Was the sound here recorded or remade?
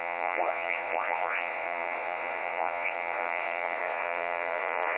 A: remade